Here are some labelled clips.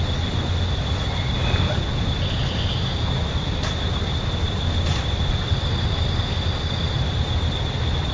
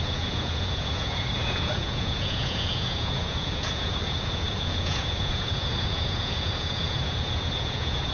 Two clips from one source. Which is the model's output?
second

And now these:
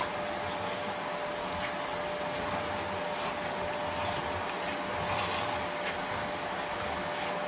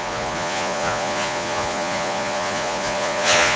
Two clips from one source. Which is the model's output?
second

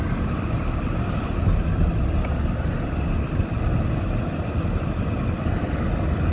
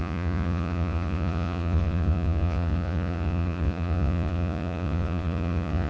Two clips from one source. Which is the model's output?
second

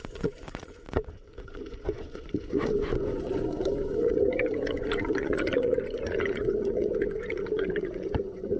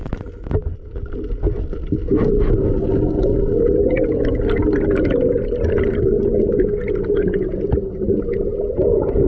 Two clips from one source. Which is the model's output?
first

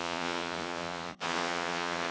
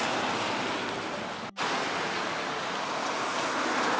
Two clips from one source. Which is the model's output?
first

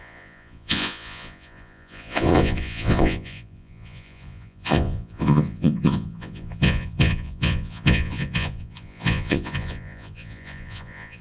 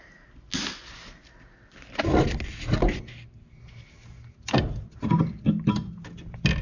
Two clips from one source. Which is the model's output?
first